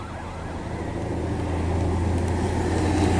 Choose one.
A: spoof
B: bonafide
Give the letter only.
B